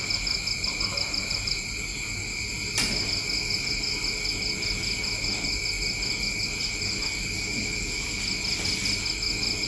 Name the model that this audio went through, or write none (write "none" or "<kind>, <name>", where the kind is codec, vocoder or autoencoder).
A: none